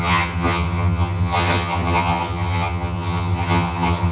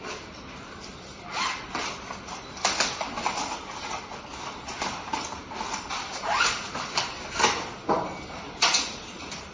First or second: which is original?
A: second